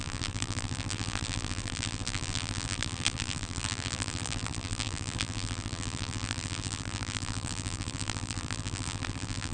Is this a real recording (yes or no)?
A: no